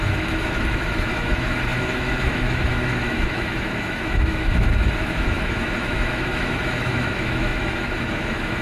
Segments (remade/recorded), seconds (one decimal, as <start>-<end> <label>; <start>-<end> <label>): 0.0-8.6 remade